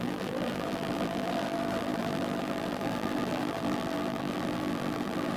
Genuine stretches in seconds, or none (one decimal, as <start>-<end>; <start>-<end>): none